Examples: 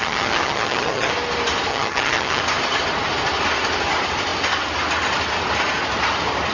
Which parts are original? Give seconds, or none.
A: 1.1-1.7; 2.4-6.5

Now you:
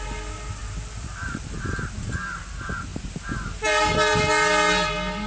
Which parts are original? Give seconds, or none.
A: 0.0-5.3

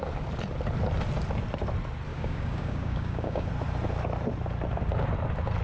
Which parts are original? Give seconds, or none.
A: 0.0-2.1; 3.5-5.6

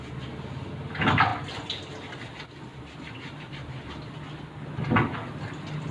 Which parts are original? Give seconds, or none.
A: 0.0-2.7; 3.7-5.9

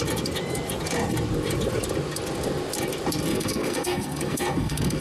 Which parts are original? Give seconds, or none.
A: 0.0-3.3

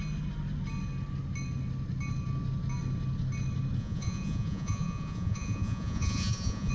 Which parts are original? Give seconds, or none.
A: 0.0-3.8